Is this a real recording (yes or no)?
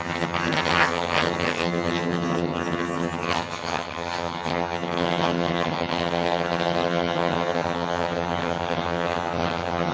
no